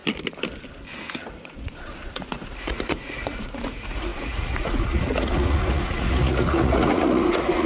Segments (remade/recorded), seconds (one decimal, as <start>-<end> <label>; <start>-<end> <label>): 0.0-1.3 recorded; 1.3-7.7 remade